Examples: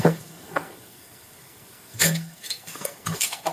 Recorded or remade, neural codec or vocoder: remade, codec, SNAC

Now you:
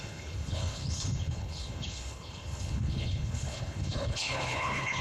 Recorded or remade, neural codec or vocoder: remade, codec, HILCodec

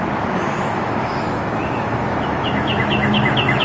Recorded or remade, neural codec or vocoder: remade, autoencoder, DAC-VAE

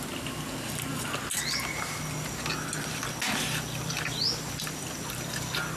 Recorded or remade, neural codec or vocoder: recorded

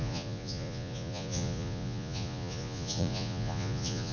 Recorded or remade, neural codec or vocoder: remade, vocoder, Vocos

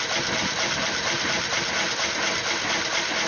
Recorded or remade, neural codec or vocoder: recorded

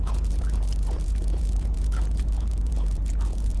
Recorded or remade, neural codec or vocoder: remade, vocoder, BigVGAN v2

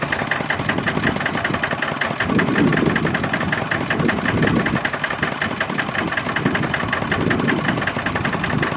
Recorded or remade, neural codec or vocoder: recorded